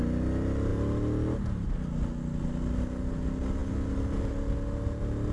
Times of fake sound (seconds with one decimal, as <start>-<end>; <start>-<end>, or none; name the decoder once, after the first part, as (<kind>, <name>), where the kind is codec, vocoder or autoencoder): none